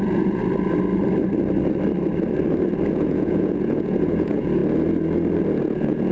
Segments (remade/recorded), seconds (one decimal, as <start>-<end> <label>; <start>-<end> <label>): 0.0-0.4 remade; 0.4-2.9 recorded; 2.9-4.6 remade; 4.6-5.6 recorded; 5.6-6.1 remade

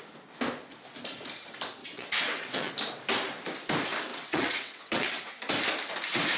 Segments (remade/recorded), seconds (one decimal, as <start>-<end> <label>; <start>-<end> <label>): 0.0-1.8 recorded; 1.8-2.7 remade; 2.7-4.1 recorded; 4.1-5.3 remade; 5.3-6.4 recorded

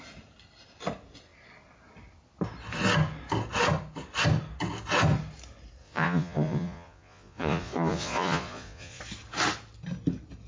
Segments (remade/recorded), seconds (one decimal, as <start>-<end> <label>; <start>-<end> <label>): 0.0-5.8 recorded; 5.8-9.0 remade; 9.0-10.5 recorded

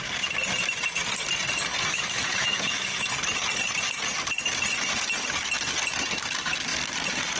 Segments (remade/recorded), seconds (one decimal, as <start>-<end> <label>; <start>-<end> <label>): 0.0-1.9 recorded; 1.9-3.0 remade; 3.0-7.4 recorded

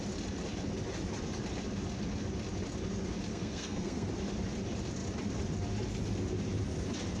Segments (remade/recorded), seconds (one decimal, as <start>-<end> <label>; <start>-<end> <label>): 0.0-3.3 recorded; 3.3-4.1 remade; 4.1-7.2 recorded

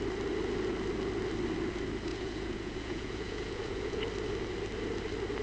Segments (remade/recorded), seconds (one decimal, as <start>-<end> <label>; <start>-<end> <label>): 0.0-2.1 recorded; 2.1-4.0 remade; 4.0-5.4 recorded

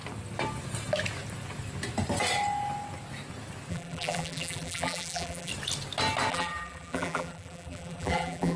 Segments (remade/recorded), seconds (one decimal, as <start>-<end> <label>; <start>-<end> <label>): 0.0-3.7 recorded; 3.7-5.5 remade; 5.5-6.3 recorded; 6.3-8.6 remade